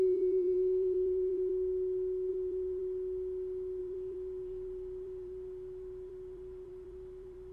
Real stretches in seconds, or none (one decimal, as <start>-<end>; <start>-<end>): 1.5-2.3; 2.8-3.8